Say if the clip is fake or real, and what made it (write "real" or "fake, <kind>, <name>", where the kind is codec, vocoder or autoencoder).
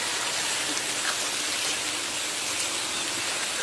real